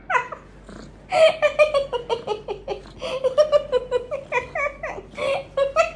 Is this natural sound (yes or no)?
yes